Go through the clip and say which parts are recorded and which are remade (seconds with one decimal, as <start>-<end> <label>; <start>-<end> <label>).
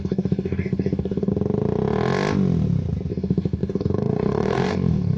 0.0-1.3 remade; 1.3-3.1 recorded; 3.1-5.2 remade